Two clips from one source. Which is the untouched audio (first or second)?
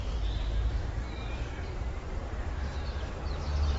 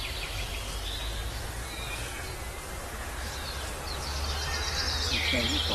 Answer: second